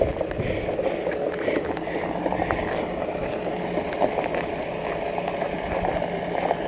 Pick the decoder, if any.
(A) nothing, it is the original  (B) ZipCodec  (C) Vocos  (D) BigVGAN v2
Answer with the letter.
A